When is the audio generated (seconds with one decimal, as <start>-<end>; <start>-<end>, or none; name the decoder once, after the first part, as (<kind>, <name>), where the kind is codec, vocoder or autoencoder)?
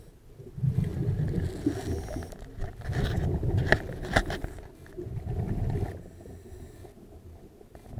none